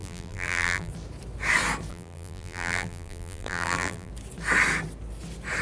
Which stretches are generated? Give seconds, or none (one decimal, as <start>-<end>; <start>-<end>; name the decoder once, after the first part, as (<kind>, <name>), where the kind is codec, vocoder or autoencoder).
0.0-0.9 (vocoder, BigVGAN v2); 1.9-4.1